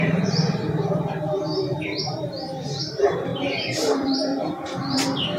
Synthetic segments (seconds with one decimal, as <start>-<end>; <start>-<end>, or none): 0.0-5.4

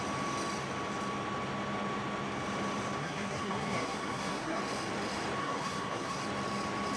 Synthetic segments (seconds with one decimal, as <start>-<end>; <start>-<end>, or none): 3.0-4.6; 5.4-6.2

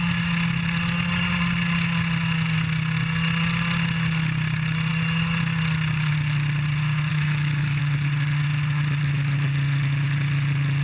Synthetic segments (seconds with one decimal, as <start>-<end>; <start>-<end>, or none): 7.1-7.8

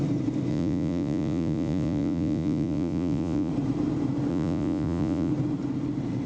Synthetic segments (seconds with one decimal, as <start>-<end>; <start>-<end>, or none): 0.5-3.5; 4.3-5.3

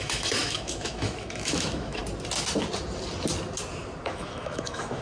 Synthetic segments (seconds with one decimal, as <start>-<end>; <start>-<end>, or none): 0.0-2.0; 4.1-5.0

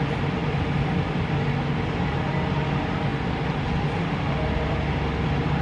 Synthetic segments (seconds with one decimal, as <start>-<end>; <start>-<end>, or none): none

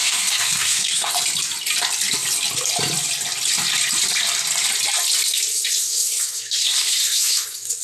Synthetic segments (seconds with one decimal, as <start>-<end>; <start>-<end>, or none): 0.0-1.1; 5.5-7.8